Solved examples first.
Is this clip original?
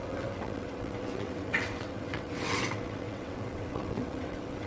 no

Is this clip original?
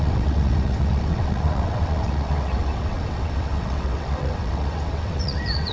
no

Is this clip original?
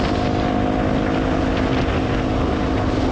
yes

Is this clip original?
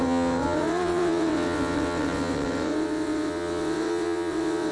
no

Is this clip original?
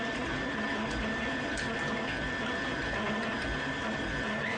yes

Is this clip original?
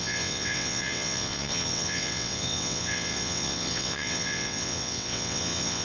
no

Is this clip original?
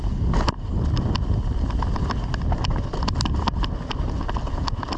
yes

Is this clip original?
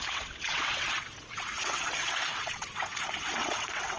no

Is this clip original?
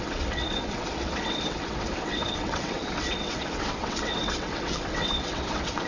no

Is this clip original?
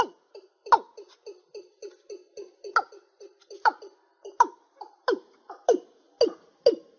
yes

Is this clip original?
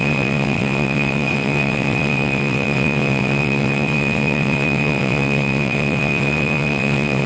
no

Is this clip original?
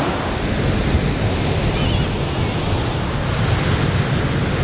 yes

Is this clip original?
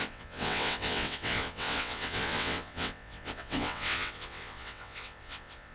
no